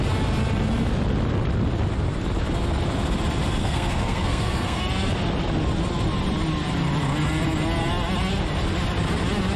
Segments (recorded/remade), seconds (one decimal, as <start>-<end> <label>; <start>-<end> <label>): 0.0-3.6 recorded; 3.6-4.8 remade; 4.8-9.6 recorded